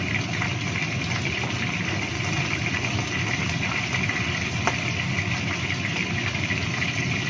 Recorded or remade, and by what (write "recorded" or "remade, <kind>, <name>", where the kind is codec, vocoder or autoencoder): recorded